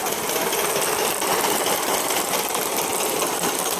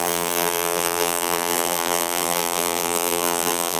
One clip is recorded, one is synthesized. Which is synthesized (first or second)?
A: second